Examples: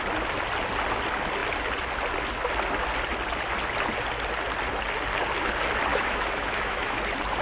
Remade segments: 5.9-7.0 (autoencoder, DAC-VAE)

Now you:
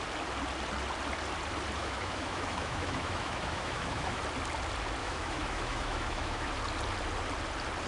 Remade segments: 1.8-4.2 (autoencoder, DAC-VAE); 5.0-6.5

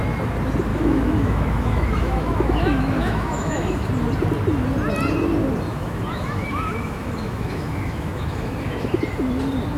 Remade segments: 0.7-3.9 (autoencoder, DAC-VAE); 5.7-9.0

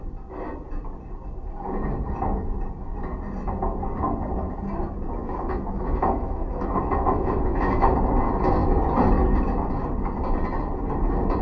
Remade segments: 5.2-7.9 (autoencoder, DAC-VAE)

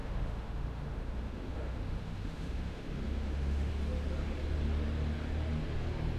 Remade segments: 0.0-3.7 (autoencoder, DAC-VAE)